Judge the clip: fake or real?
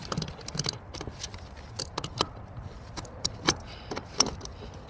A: real